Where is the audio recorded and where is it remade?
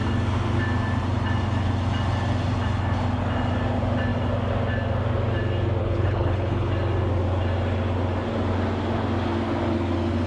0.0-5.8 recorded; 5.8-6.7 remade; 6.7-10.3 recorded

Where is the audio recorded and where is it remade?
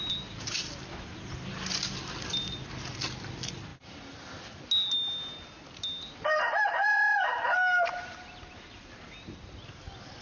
0.0-10.2 recorded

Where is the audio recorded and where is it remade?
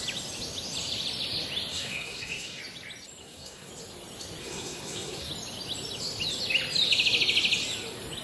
0.0-1.7 recorded; 1.7-2.6 remade; 2.6-3.2 recorded; 3.2-3.7 remade; 3.7-4.4 recorded; 4.4-5.3 remade; 5.3-8.2 recorded